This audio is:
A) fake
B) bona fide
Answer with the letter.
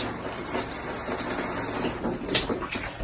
B